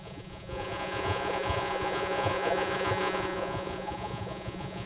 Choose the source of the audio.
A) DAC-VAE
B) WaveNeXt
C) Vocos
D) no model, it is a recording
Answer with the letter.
C